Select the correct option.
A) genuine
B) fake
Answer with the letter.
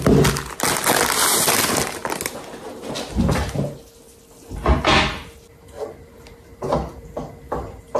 A